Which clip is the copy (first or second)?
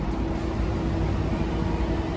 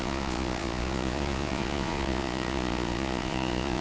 second